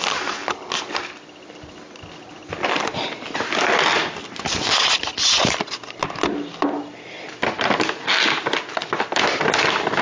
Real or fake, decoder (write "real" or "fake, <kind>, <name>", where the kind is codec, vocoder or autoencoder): real